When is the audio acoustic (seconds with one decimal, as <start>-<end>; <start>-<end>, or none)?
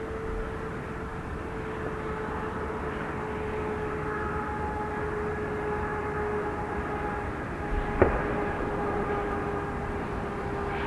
0.0-1.1; 1.6-10.9